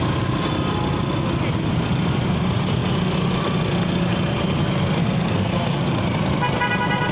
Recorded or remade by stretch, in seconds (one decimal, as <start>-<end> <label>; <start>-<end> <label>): 0.0-5.0 recorded; 5.0-6.0 remade; 6.0-7.1 recorded